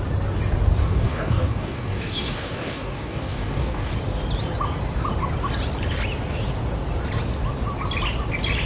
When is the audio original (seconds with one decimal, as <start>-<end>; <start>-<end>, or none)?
0.0-0.8; 3.9-8.7

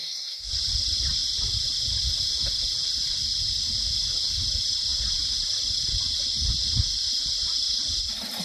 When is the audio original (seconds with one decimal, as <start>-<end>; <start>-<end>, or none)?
0.5-8.4

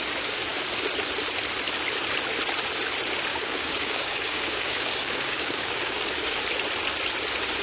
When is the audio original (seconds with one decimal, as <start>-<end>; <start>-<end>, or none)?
0.0-3.3; 6.4-7.6

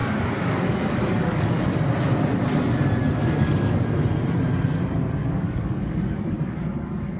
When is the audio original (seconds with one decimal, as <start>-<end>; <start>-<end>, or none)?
1.7-3.2; 3.9-5.2